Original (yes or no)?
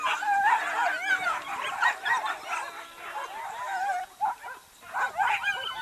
yes